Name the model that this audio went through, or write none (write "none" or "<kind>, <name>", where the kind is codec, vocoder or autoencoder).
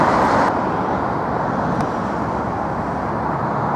none